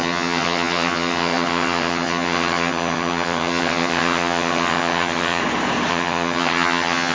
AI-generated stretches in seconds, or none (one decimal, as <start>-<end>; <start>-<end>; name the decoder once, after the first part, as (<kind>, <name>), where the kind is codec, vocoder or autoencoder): 0.0-5.4 (vocoder, HiFi-GAN); 5.9-7.1